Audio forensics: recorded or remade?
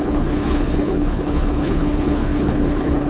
remade